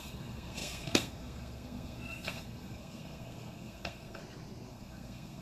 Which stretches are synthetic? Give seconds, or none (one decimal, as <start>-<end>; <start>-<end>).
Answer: 0.0-4.2; 4.7-5.4